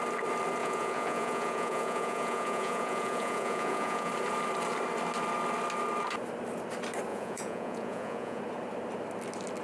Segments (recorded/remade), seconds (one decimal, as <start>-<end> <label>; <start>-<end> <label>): 0.0-0.6 recorded; 0.6-4.1 remade; 4.1-7.1 recorded; 7.1-8.4 remade; 8.4-9.6 recorded